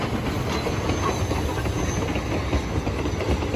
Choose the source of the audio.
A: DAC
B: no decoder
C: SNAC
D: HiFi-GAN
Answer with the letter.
B